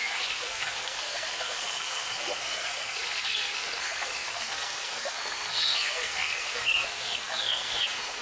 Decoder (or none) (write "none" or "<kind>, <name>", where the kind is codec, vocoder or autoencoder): codec, SNAC